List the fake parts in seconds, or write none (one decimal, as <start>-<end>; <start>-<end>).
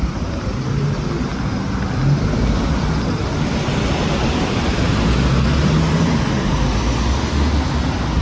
none